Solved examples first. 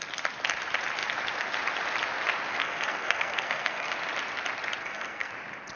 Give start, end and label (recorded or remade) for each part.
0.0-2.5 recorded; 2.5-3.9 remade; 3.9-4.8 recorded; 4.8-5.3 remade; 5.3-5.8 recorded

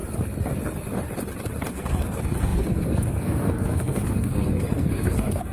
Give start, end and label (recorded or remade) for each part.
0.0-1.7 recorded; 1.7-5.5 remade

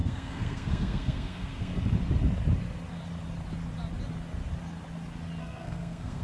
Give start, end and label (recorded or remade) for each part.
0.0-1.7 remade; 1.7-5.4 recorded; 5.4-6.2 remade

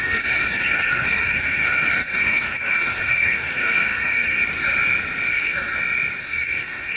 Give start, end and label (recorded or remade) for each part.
0.0-4.4 remade; 4.4-5.3 recorded; 5.3-5.7 remade; 5.7-6.2 recorded; 6.2-7.0 remade

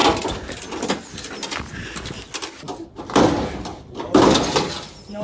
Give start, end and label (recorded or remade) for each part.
0.0-5.2 recorded

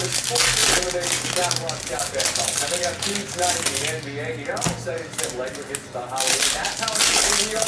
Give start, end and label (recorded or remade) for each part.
0.0-7.7 recorded

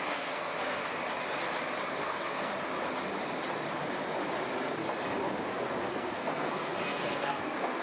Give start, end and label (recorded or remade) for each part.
0.0-0.8 remade; 0.8-1.9 recorded; 1.9-2.5 remade; 2.5-5.9 recorded; 5.9-7.8 remade

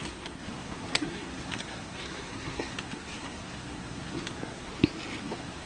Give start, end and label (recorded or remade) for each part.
0.0-4.7 remade; 4.7-5.2 recorded; 5.2-5.7 remade